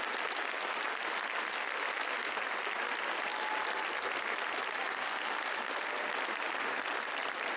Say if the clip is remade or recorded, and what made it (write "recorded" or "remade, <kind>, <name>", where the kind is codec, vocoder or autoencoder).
recorded